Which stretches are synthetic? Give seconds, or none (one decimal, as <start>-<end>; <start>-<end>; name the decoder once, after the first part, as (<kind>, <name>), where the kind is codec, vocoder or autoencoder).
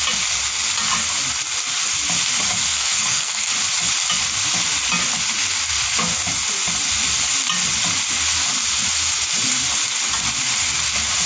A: 2.7-3.5 (codec, SNAC)